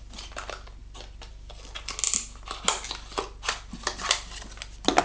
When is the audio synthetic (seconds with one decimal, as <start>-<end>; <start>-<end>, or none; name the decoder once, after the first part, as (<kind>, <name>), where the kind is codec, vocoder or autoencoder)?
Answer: none

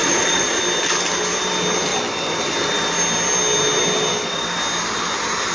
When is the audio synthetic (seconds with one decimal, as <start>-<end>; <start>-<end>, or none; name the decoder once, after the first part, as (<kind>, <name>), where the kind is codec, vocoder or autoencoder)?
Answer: 0.0-0.6 (vocoder, Vocos)